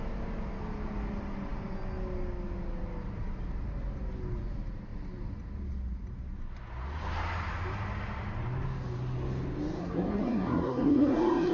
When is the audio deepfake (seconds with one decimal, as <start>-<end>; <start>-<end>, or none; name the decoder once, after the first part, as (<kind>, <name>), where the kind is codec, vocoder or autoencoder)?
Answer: 9.8-11.5 (codec, SNAC)

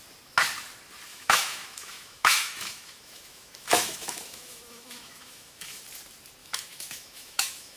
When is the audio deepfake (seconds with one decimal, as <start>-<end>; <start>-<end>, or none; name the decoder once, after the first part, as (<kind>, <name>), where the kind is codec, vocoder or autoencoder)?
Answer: 1.1-5.8 (autoencoder, DAC-VAE); 6.4-7.8

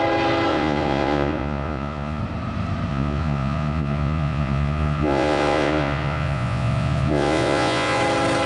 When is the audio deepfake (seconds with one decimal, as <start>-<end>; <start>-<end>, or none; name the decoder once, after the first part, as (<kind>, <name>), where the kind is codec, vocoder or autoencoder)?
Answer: 0.5-2.2 (vocoder, Vocos); 2.9-8.0

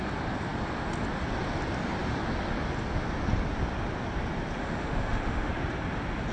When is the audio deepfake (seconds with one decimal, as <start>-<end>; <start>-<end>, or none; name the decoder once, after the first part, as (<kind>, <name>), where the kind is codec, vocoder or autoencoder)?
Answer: 4.6-5.5 (autoencoder, DAC-VAE)

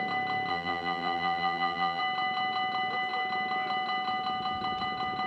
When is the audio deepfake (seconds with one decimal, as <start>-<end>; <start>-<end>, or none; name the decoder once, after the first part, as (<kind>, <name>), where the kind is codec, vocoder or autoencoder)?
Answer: 0.5-2.0 (vocoder, BigVGAN v2)